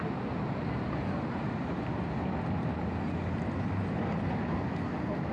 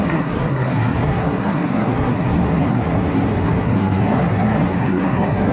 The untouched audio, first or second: first